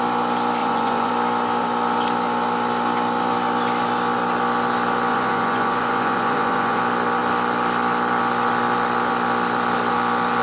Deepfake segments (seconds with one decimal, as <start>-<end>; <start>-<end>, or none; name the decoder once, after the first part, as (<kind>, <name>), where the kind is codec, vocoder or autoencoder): 0.6-1.1 (vocoder, Vocos); 5.1-6.8